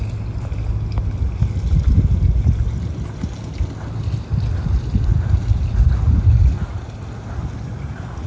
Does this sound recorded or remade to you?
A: recorded